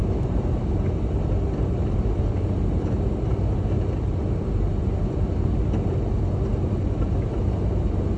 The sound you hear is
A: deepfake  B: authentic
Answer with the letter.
B